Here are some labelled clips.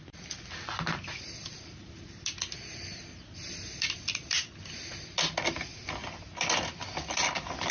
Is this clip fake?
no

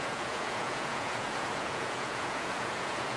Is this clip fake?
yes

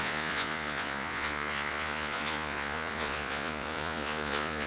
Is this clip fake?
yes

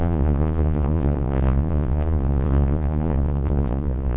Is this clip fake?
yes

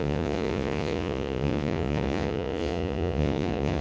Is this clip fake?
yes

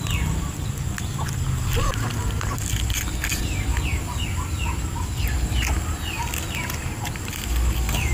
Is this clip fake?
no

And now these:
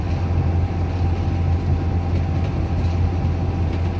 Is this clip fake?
no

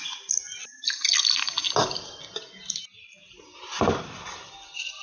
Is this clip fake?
no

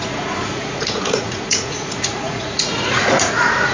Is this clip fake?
yes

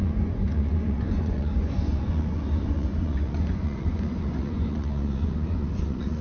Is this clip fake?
yes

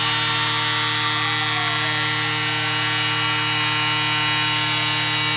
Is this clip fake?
no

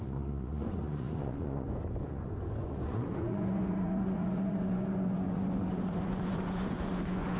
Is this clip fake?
yes